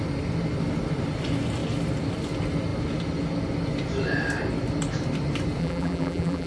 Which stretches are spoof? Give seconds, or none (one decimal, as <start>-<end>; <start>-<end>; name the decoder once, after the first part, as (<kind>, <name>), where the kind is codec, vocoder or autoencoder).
5.6-6.5 (vocoder, BigVGAN v2)